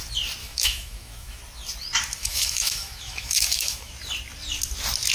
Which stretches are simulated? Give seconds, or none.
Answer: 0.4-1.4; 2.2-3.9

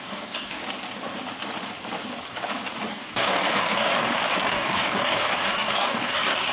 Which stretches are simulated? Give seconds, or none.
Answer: 0.0-0.6; 2.9-3.9; 4.5-6.5

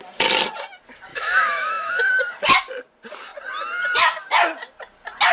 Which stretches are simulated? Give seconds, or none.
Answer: 1.1-2.1